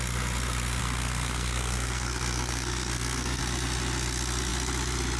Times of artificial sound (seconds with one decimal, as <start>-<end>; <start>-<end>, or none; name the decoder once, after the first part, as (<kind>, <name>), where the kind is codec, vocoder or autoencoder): 0.8-3.4 (codec, SNAC)